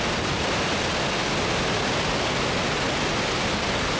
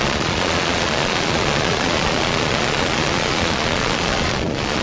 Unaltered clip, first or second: first